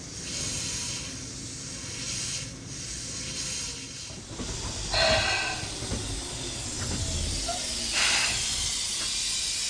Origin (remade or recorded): recorded